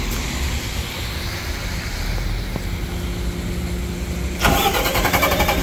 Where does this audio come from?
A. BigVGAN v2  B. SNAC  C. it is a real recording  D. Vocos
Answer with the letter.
C